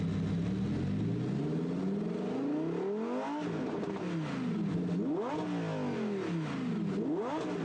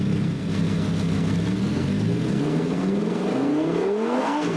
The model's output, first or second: second